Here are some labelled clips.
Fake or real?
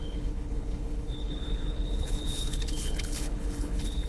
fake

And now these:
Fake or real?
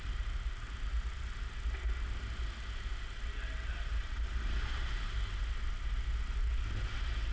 real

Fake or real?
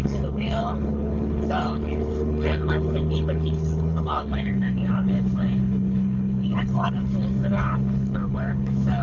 fake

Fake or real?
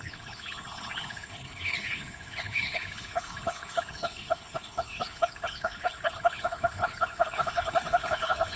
fake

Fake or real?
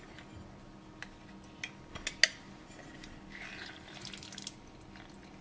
real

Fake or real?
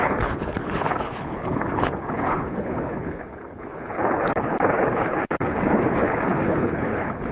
fake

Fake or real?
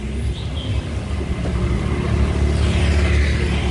real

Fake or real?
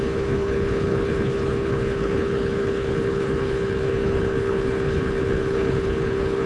fake